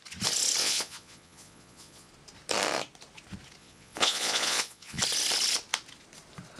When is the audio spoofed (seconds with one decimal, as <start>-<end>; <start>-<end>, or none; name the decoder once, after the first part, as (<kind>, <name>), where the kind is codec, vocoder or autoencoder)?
0.6-2.1 (vocoder, Vocos); 3.6-5.0